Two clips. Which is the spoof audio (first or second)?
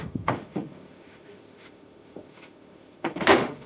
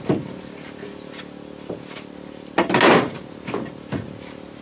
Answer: first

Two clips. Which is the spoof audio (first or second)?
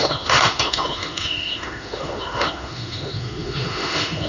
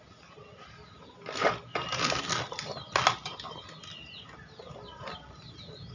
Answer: first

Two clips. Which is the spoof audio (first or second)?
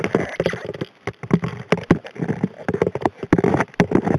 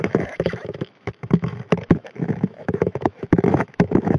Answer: second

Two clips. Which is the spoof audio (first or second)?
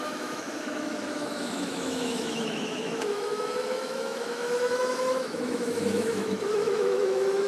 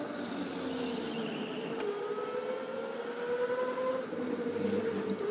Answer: first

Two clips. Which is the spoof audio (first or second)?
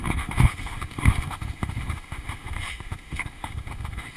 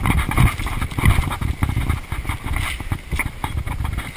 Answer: first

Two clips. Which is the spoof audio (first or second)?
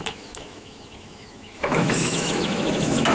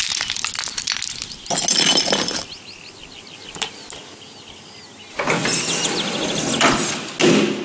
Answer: first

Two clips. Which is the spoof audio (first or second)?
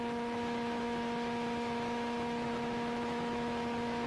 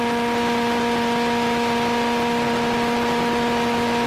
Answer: first